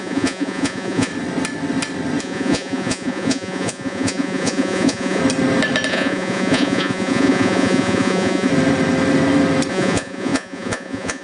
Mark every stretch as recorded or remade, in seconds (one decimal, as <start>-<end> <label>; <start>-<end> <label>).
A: 0.0-1.1 remade; 1.1-2.2 recorded; 2.2-5.2 remade; 5.2-5.9 recorded; 5.9-8.5 remade; 8.5-9.7 recorded; 9.7-11.2 remade